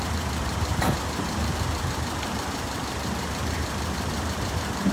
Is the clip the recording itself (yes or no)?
no